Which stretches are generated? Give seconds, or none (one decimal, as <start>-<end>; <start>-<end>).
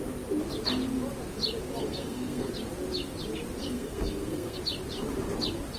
1.8-2.5; 3.6-4.6